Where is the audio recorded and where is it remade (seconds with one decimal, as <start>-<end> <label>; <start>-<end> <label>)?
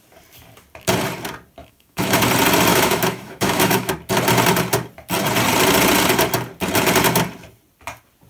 0.0-1.6 recorded; 1.6-2.2 remade; 2.2-2.7 recorded; 2.7-3.9 remade; 3.9-8.3 recorded